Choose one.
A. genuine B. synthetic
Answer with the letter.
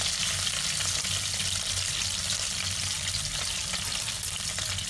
A